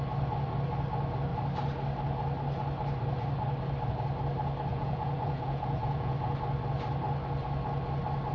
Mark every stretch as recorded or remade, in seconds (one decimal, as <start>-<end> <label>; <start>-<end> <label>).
0.0-4.7 recorded; 4.7-6.3 remade; 6.3-8.3 recorded